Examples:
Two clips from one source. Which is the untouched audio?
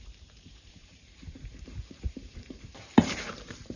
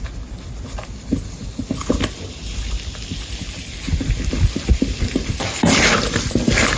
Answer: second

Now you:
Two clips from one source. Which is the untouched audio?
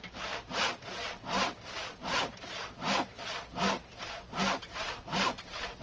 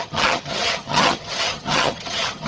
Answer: first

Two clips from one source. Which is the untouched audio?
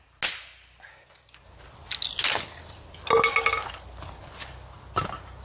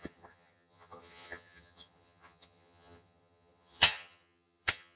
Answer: first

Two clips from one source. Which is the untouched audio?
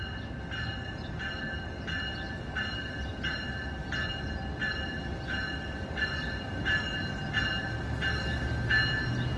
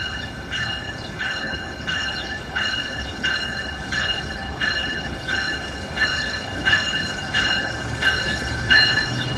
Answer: first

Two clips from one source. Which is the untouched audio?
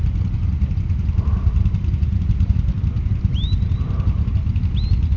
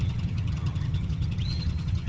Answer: first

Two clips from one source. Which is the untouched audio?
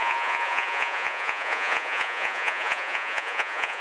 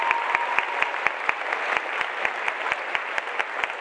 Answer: second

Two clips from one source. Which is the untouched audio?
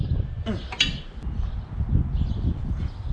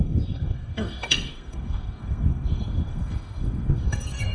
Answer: first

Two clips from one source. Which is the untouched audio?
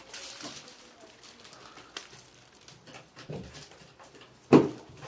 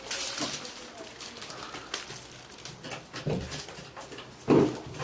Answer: second